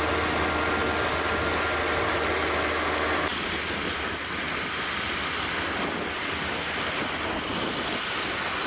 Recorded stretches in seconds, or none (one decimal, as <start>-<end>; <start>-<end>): 0.0-8.7